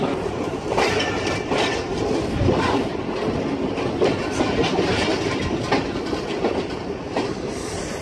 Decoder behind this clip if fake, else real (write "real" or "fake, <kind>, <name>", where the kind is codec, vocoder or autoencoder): real